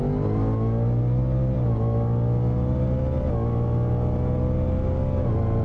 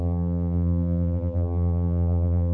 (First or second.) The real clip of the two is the first